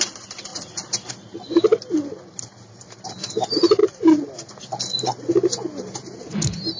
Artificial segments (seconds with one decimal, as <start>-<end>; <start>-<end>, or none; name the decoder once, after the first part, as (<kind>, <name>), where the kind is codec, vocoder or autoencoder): none